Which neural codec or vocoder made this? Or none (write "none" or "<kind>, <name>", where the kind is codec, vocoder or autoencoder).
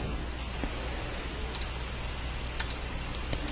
none